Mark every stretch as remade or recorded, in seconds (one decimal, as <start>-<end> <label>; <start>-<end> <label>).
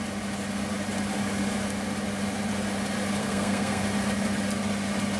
0.0-3.2 recorded; 3.2-3.8 remade; 3.8-5.2 recorded